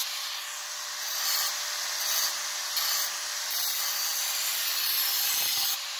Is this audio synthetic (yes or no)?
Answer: no